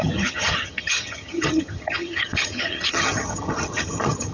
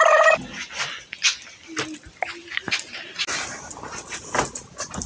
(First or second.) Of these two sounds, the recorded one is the second